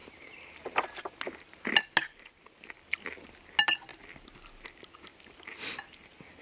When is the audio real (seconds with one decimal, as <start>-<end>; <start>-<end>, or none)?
0.0-6.4